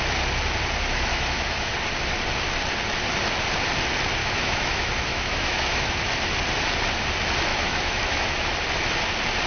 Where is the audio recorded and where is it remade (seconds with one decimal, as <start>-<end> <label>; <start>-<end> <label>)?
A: 0.0-1.1 recorded; 1.1-1.7 remade; 1.7-4.2 recorded; 4.2-5.9 remade; 5.9-7.5 recorded; 7.5-8.5 remade; 8.5-9.5 recorded